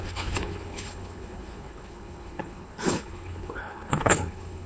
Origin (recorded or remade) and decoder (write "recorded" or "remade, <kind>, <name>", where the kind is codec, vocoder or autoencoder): remade, codec, HILCodec